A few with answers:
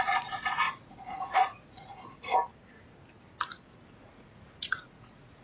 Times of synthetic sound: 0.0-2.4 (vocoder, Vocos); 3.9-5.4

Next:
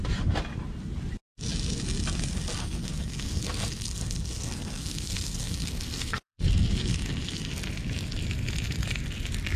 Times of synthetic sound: 2.6-7.5 (codec, SNAC)

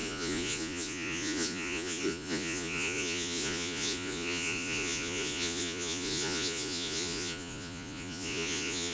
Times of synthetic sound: 0.0-8.9 (vocoder, Vocos)

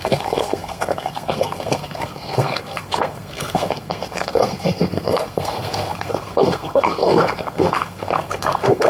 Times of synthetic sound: 0.0-8.9 (codec, SNAC)

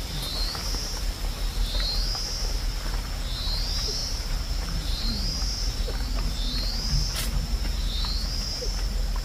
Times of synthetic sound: 4.0-6.9 (vocoder, BigVGAN v2)

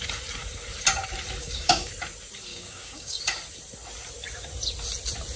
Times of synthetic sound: 1.4-1.9 (codec, DAC); 2.5-3.2

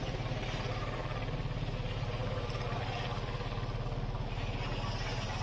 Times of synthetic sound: none